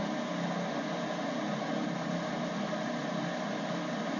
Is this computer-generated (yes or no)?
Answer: no